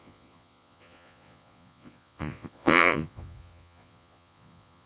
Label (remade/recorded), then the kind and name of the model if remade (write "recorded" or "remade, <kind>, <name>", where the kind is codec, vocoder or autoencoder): remade, vocoder, Vocos